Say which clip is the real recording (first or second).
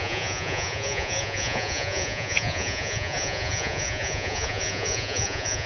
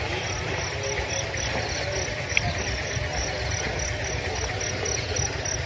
second